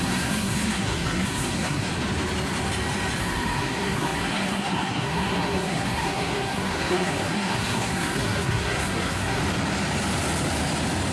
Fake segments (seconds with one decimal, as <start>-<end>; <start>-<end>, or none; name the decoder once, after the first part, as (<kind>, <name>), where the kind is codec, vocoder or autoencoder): 0.0-1.9 (codec, SNAC); 3.2-9.4